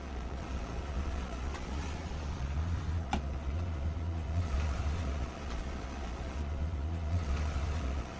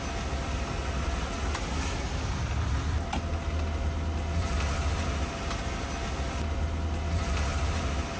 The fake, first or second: first